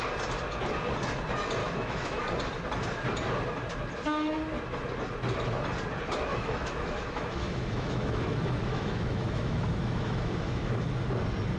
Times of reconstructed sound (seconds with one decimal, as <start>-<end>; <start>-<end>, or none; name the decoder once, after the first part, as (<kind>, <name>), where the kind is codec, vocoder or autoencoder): 1.6-2.2 (autoencoder, DAC-VAE); 6.3-10.8